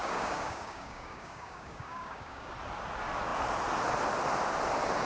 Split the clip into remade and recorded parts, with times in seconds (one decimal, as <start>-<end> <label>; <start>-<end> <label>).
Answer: 0.0-2.5 remade; 2.5-5.1 recorded